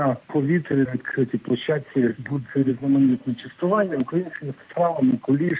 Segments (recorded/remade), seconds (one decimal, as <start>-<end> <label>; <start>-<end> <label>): 0.0-2.1 recorded; 2.1-2.7 remade; 2.7-3.1 recorded; 3.1-4.0 remade; 4.0-5.6 recorded